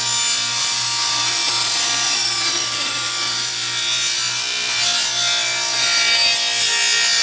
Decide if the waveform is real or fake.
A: real